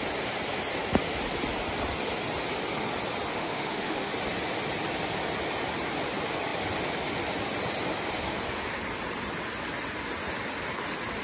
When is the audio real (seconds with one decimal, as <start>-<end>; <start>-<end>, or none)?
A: 0.0-3.3; 4.1-11.2